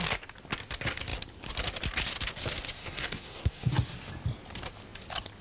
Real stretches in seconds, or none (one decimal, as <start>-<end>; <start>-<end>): 0.0-2.8; 3.7-5.4